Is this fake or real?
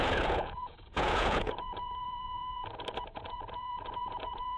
fake